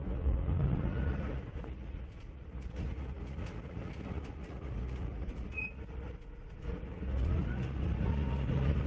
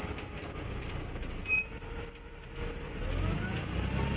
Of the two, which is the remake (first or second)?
first